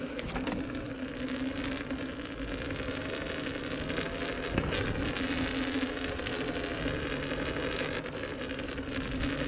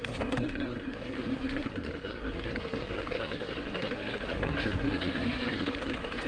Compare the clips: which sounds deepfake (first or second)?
second